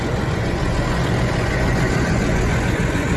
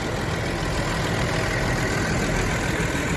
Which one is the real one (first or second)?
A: second